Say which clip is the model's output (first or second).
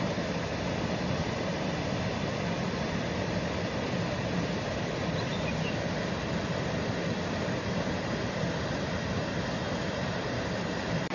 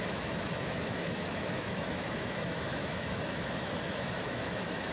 second